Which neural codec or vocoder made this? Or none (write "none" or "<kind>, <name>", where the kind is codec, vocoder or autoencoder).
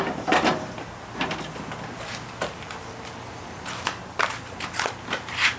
none